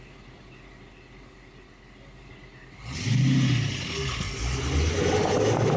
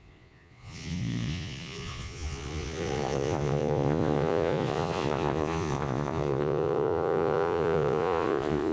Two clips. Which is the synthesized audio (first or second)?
second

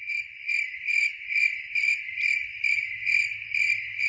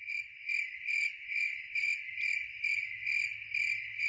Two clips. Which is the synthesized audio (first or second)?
first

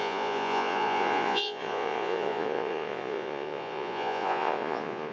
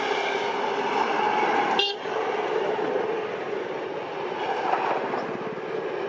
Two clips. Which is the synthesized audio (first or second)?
first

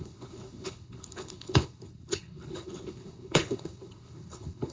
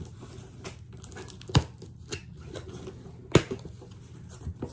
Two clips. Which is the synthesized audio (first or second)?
first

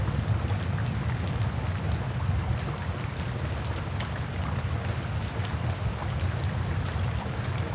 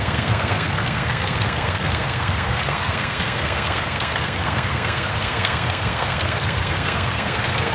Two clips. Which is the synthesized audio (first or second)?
second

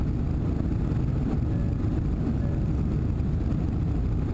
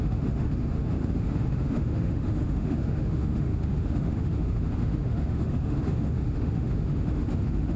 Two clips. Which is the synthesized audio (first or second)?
second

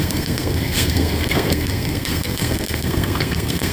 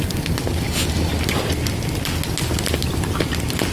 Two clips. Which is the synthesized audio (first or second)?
first